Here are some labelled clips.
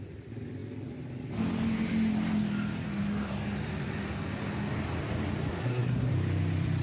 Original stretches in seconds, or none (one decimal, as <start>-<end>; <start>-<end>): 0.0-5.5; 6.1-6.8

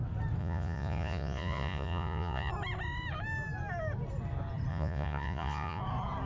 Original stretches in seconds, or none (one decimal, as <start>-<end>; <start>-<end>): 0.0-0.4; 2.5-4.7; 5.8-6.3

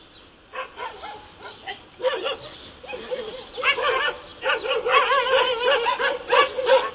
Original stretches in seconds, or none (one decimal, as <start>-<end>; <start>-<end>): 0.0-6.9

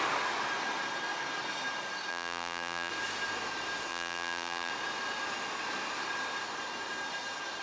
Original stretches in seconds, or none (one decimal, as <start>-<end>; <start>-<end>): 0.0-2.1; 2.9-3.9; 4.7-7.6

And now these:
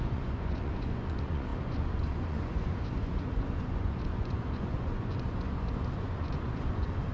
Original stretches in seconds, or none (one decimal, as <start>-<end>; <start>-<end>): none

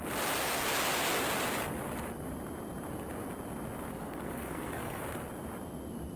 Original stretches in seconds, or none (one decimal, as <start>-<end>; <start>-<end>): 0.0-3.9; 5.0-6.2

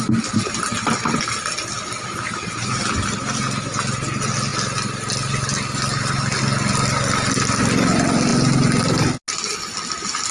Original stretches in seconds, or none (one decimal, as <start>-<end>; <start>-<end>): 0.0-10.3